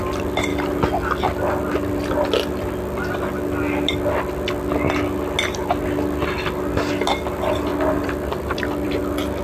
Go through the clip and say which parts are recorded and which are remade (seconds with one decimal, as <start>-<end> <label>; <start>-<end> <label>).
0.0-0.5 recorded; 0.5-2.1 remade; 2.1-7.7 recorded; 7.7-9.0 remade; 9.0-9.4 recorded